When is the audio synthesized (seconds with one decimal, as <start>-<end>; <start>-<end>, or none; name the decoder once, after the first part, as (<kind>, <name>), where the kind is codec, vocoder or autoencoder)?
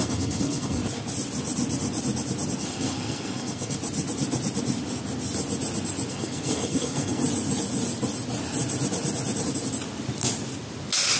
0.0-0.8 (codec, SNAC); 2.6-3.8; 6.1-7.2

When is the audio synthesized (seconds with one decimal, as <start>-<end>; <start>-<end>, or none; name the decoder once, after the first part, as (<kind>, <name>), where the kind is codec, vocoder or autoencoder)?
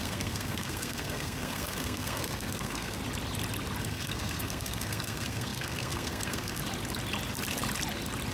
0.0-3.0 (codec, SNAC); 3.8-6.6